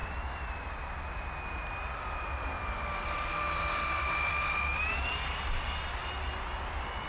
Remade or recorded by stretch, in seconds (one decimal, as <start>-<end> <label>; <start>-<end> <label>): 0.0-6.0 remade; 6.0-6.6 recorded; 6.6-7.1 remade

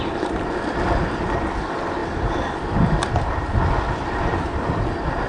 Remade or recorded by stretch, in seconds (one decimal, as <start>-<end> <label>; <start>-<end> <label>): 0.0-5.3 recorded

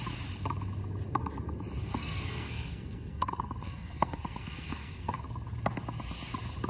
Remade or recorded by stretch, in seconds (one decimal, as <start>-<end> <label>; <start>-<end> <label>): 0.0-1.8 recorded; 1.8-5.2 remade; 5.2-6.7 recorded